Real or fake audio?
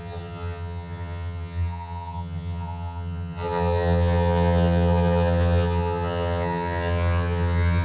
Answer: fake